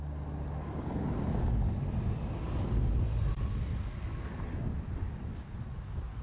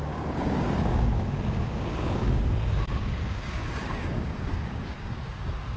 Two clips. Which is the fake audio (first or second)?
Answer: second